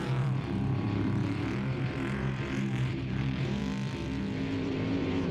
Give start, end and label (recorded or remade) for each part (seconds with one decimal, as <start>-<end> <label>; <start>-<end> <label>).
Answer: 0.0-3.6 remade; 3.6-4.6 recorded; 4.6-5.3 remade